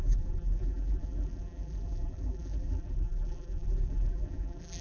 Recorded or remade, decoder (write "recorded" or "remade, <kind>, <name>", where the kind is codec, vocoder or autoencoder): remade, vocoder, BigVGAN v2